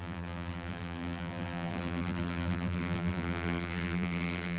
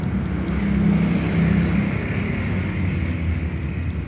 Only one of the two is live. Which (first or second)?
second